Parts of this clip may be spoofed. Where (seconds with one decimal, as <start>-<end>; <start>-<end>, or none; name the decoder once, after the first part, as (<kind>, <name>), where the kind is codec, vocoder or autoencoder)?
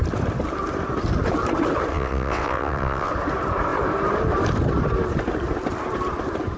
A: 1.9-3.1 (vocoder, WaveNeXt)